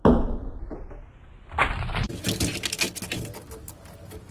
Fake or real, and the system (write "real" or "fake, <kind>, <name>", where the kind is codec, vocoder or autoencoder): real